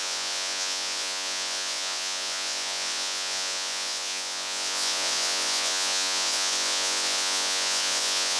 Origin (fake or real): fake